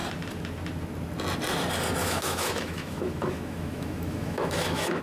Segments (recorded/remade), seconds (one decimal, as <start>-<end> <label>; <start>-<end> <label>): 0.0-2.0 recorded; 2.0-5.0 remade